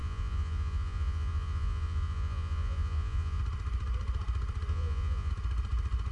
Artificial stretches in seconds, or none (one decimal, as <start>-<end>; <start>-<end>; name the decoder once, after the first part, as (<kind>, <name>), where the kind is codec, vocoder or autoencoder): 0.0-3.4 (vocoder, Vocos); 4.7-5.3